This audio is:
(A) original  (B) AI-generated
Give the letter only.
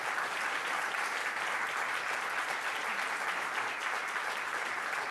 A